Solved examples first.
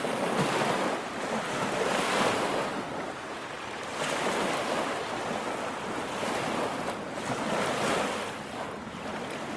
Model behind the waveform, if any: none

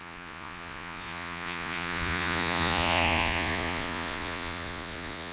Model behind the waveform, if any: vocoder, Vocos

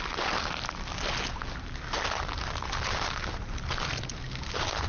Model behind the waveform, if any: none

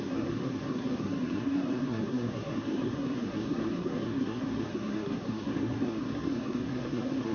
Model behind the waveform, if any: codec, SNAC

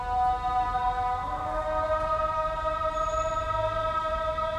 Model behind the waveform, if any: none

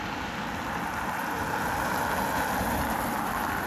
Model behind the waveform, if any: none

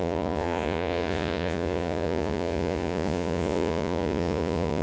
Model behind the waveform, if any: vocoder, Vocos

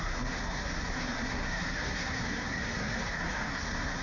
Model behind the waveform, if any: codec, SNAC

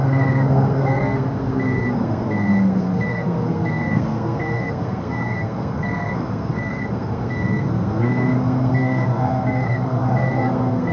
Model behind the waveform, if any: codec, SNAC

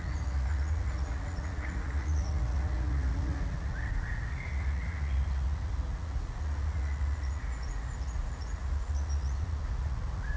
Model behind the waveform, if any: vocoder, Vocos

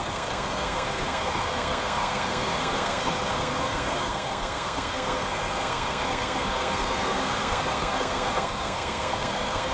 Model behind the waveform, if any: codec, SNAC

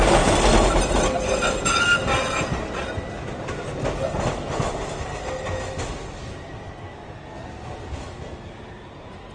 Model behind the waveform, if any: none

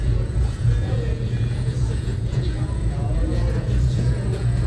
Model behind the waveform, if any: vocoder, Vocos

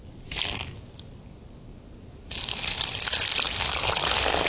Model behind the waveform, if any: none